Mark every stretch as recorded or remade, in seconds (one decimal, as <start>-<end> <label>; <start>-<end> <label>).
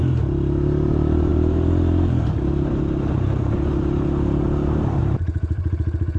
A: 0.0-6.2 remade